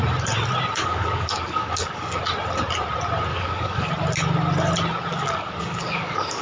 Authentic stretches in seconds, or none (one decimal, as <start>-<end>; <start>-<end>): 0.0-0.8; 2.2-3.3; 3.9-5.1

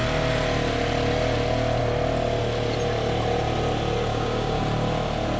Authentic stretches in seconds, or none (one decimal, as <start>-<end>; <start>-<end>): 0.0-4.1; 4.6-5.4

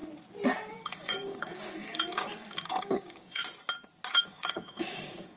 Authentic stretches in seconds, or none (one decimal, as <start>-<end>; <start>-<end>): 0.0-0.7; 3.4-4.1

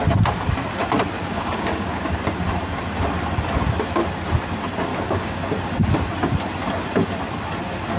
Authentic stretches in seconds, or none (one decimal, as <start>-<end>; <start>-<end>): 0.0-1.2; 2.1-4.9; 5.4-8.0

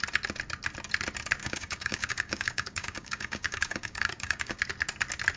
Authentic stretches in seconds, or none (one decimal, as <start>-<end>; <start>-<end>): 0.0-1.4; 4.6-5.4

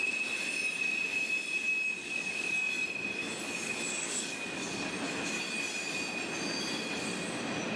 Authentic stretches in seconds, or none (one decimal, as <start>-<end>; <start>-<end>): 0.0-2.0; 2.7-3.9; 4.9-7.8

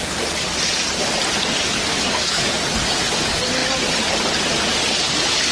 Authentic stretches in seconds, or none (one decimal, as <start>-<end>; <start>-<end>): 0.0-1.9; 2.5-5.5

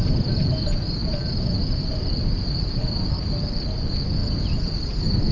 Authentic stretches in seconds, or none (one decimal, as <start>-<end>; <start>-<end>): 0.0-5.3